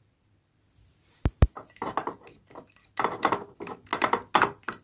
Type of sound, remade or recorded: recorded